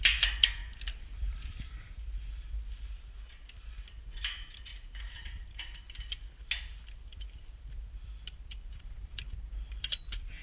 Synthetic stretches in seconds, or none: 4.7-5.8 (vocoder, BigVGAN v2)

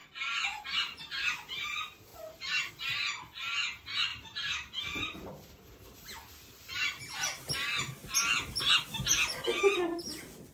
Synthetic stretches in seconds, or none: 4.1-6.1 (vocoder, BigVGAN v2)

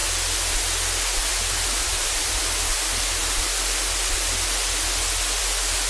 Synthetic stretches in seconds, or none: 1.8-2.4 (vocoder, BigVGAN v2)

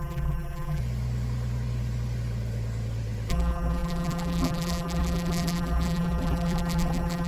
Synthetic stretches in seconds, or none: 0.0-0.8 (vocoder, BigVGAN v2); 3.3-7.3

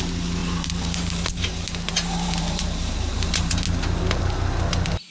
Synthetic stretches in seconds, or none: 0.4-3.5 (vocoder, BigVGAN v2)

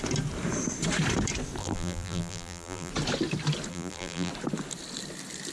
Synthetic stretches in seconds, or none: 1.6-2.9 (vocoder, BigVGAN v2); 3.7-4.3

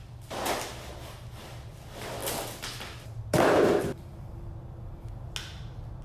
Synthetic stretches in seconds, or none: 2.2-4.6 (vocoder, BigVGAN v2)

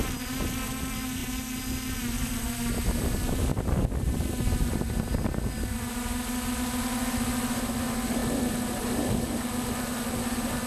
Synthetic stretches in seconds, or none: none